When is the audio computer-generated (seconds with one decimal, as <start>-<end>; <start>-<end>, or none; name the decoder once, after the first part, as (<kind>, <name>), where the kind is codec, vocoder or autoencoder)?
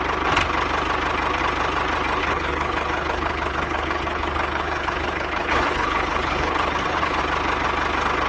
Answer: 2.2-7.2 (codec, HILCodec)